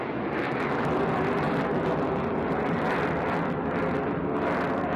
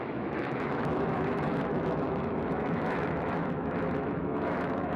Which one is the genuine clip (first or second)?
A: first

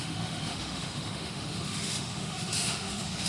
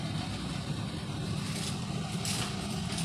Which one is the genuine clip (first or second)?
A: second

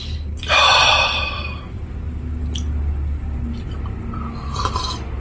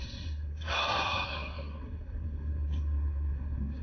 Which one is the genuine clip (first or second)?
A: first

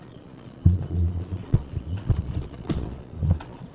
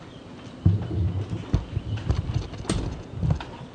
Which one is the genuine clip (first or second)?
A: second